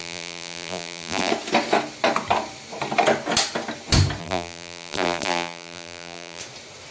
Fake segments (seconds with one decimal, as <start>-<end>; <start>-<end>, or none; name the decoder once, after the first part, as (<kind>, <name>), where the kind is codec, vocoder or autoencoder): 0.0-1.3 (vocoder, BigVGAN v2); 4.2-6.4